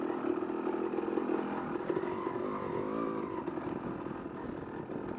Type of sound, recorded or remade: recorded